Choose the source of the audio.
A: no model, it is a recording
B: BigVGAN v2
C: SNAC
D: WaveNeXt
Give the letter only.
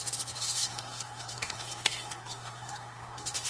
C